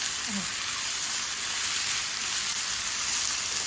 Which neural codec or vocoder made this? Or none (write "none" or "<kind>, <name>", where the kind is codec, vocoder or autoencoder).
none